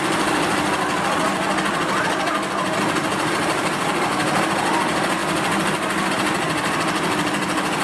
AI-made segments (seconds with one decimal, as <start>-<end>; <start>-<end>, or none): 4.1-4.8